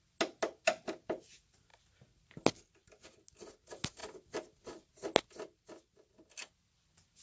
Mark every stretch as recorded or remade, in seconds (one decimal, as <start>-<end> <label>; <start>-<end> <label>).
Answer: 0.0-7.2 recorded